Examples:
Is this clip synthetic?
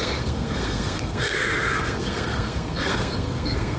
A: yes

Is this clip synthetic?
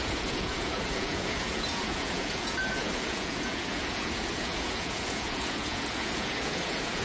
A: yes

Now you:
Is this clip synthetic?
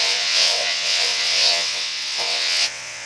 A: yes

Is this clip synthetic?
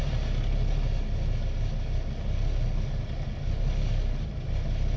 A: no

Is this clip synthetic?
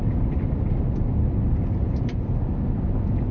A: no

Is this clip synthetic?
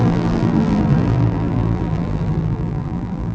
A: yes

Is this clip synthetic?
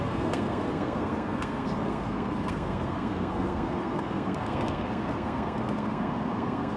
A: yes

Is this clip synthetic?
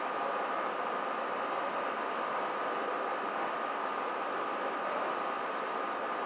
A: no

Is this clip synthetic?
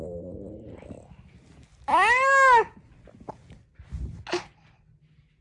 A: no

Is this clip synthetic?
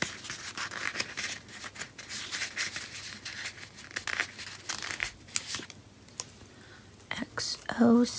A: no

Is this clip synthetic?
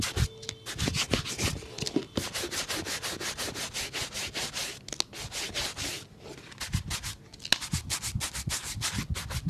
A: no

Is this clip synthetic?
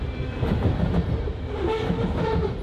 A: no